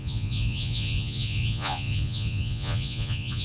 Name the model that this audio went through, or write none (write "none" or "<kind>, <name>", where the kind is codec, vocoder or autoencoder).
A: vocoder, Vocos